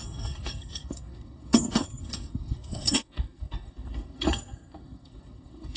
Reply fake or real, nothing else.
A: fake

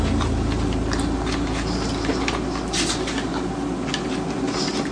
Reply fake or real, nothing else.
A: real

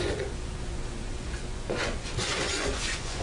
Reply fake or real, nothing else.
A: fake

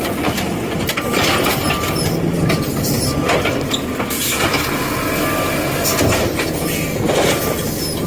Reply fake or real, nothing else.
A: real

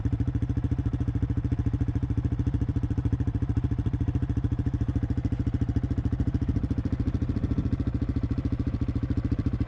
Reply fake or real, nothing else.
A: fake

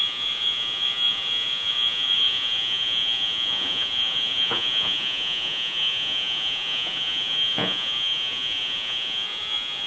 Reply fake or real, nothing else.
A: fake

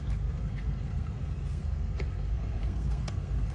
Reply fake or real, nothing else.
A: fake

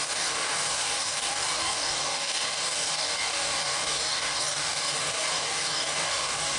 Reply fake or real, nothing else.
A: fake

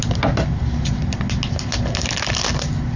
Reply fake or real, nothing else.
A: real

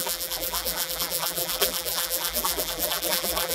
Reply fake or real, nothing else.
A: fake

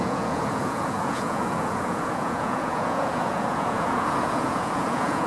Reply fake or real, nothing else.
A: fake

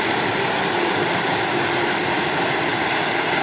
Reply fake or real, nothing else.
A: real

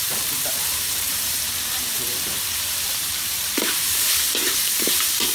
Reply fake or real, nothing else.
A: fake